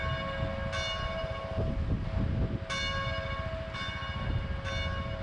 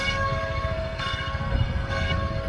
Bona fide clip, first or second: first